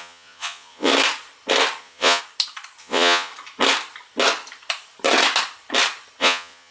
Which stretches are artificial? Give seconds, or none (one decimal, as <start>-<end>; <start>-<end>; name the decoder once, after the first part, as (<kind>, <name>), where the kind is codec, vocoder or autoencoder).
0.0-0.9 (vocoder, Vocos); 1.8-2.2; 2.8-3.3; 6.2-6.7